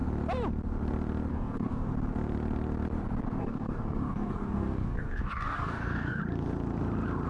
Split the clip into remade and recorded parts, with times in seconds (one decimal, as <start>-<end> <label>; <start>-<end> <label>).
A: 0.0-1.3 recorded; 1.3-1.9 remade; 1.9-3.4 recorded; 3.4-6.2 remade; 6.2-7.3 recorded